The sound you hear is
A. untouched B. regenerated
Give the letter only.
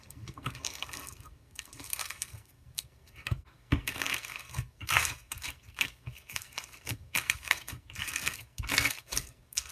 B